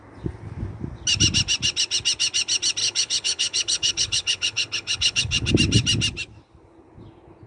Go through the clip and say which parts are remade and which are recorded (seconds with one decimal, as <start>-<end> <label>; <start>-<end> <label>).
0.0-2.8 recorded; 2.8-5.5 remade; 5.5-7.5 recorded